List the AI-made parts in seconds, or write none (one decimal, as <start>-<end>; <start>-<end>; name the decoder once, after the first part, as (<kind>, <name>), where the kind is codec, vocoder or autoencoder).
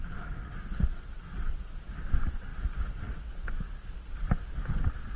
none